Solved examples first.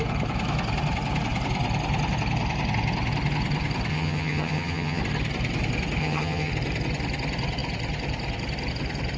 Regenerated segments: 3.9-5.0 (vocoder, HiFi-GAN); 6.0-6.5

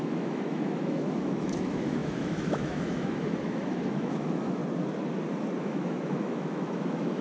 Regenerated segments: 0.0-4.6 (autoencoder, DAC-VAE); 5.6-7.2

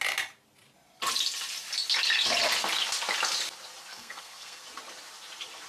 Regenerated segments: 3.9-4.6 (codec, SNAC)

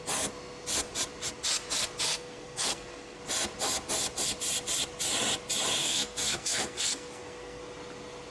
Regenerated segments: 2.1-3.2 (codec, SNAC); 5.8-7.6

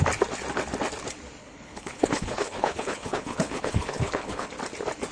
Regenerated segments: 1.4-4.5 (codec, HILCodec)

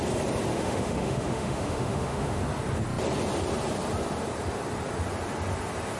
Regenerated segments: 0.5-2.4 (autoencoder, DAC-VAE)

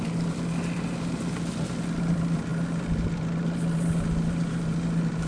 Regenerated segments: none